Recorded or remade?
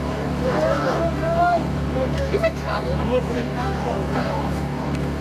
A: remade